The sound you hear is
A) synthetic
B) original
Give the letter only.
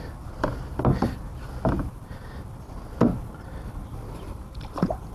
B